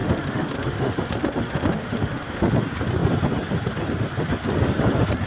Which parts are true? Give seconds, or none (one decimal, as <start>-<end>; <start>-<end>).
2.5-5.3